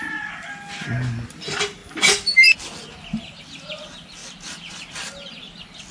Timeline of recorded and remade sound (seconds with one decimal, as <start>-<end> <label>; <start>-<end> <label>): 0.0-5.9 recorded